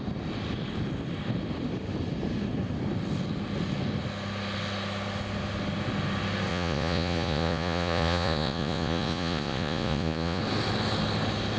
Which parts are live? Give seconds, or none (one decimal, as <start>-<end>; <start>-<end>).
0.0-6.5; 10.4-11.6